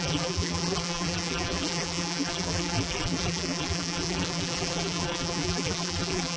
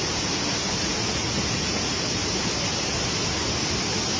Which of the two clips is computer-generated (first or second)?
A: first